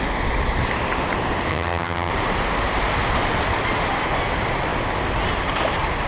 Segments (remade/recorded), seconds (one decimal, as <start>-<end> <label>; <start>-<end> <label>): 0.0-1.5 recorded; 1.5-2.1 remade; 2.1-6.1 recorded